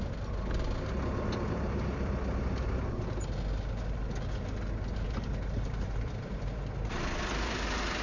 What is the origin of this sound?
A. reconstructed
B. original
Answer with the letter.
B